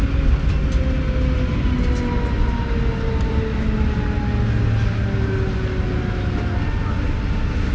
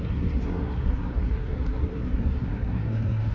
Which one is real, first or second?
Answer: first